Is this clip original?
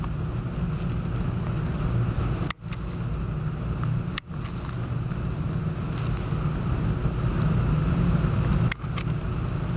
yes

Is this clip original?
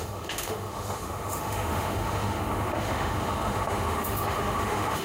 no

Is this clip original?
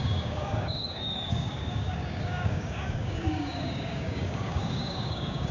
no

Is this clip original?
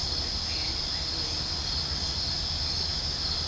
yes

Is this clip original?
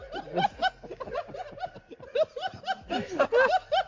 yes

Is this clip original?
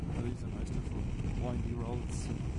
yes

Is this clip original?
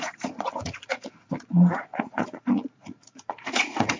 no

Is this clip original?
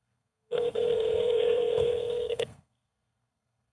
no